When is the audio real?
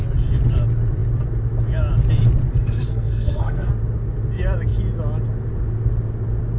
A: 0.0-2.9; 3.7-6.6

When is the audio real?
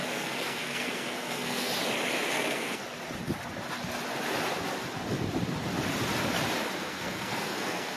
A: 1.7-2.3; 2.8-6.8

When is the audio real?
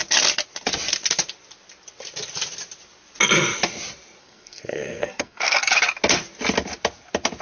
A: 0.0-4.2; 5.7-7.4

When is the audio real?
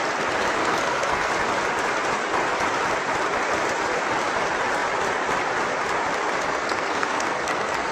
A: 0.0-0.6; 1.3-6.5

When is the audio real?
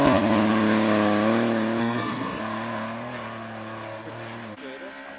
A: 0.0-1.8; 2.4-5.2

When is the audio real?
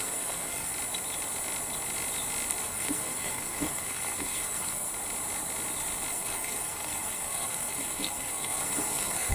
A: 0.7-2.6; 4.9-6.1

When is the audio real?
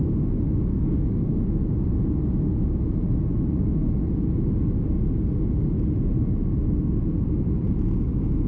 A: 0.0-0.7; 1.4-8.5